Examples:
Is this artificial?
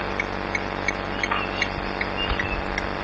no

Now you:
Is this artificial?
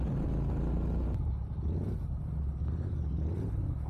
no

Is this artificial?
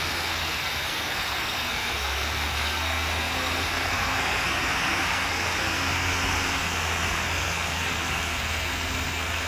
yes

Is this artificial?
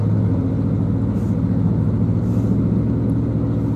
no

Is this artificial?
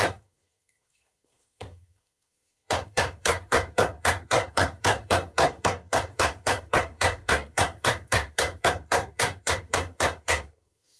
yes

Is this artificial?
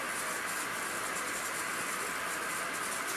no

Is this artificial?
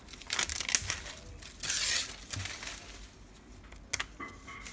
no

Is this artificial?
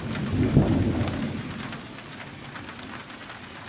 no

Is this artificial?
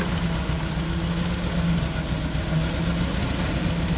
no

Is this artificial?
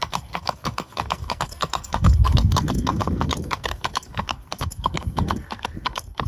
yes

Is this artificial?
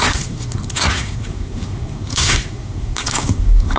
yes